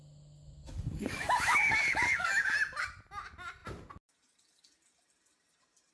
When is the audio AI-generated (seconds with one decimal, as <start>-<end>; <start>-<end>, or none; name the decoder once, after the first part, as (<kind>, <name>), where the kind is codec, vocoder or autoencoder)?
0.6-2.5 (codec, DAC)